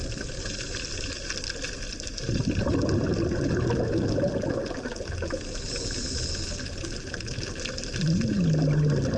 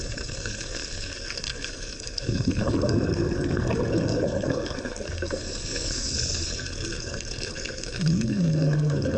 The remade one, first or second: second